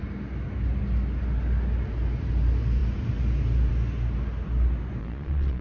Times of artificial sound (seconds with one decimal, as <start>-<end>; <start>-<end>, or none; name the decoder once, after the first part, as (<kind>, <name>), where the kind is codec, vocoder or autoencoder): 5.0-5.6 (vocoder, Vocos)